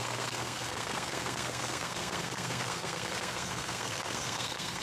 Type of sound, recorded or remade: remade